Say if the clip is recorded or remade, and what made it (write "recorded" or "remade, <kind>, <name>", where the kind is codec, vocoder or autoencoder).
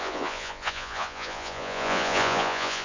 remade, vocoder, Vocos